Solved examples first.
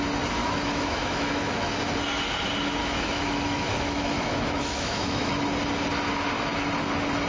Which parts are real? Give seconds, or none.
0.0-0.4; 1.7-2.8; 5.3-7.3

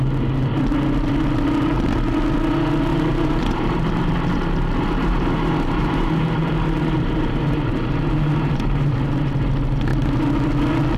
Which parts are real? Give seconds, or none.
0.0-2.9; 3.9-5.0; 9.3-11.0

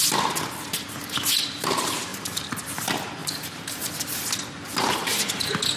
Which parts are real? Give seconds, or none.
0.0-2.1; 2.6-3.2; 3.9-5.8

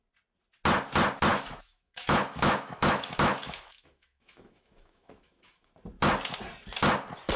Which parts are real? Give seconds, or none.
0.0-1.3; 5.7-7.4

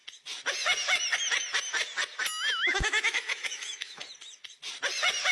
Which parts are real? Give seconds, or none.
0.0-2.6; 4.0-5.3

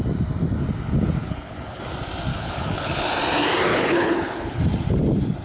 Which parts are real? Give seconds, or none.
0.0-1.2; 1.8-2.3; 3.1-3.7; 4.6-5.4